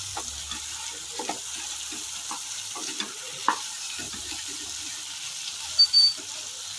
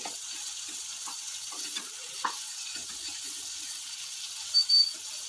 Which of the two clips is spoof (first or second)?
second